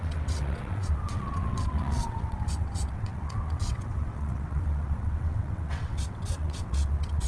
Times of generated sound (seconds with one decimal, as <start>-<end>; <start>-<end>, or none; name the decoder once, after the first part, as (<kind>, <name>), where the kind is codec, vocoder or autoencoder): 0.0-7.3 (vocoder, WaveNeXt)